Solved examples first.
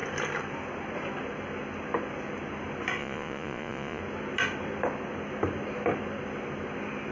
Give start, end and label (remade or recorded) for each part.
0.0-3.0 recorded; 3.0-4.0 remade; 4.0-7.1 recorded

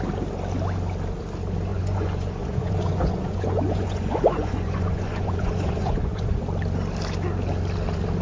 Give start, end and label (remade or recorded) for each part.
0.0-1.7 recorded; 1.7-6.4 remade; 6.4-8.2 recorded

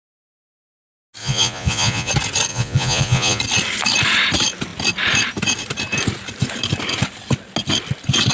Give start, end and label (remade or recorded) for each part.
0.0-1.2 recorded; 1.2-2.1 remade; 2.1-2.5 recorded; 2.5-3.4 remade; 3.4-8.3 recorded

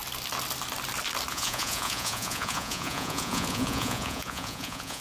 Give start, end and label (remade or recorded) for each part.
0.0-1.3 recorded; 1.3-5.0 remade

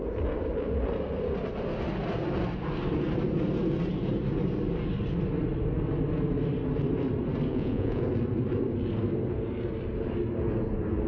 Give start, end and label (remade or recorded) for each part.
0.0-7.5 recorded; 7.5-8.0 remade; 8.0-11.1 recorded

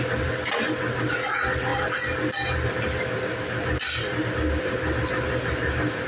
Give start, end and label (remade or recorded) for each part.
0.0-6.1 recorded

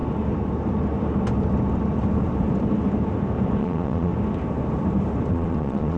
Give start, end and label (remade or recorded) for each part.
0.0-3.6 recorded; 3.6-4.1 remade; 4.1-5.3 recorded; 5.3-6.0 remade

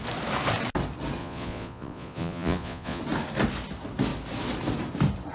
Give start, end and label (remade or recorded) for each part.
0.0-1.2 recorded; 1.2-3.0 remade; 3.0-5.3 recorded